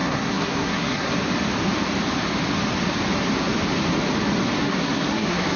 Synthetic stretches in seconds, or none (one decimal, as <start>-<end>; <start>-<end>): 0.0-1.2; 4.6-5.6